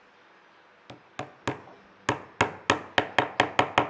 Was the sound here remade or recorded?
recorded